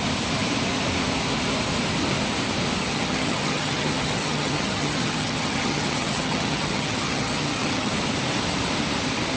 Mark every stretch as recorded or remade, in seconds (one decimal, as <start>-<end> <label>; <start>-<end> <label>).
0.0-2.8 recorded; 2.8-7.9 remade; 7.9-9.4 recorded